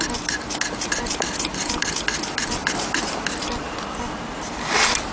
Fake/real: real